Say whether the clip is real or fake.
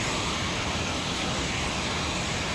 real